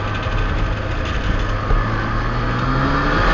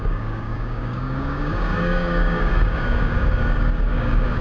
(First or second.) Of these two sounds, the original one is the first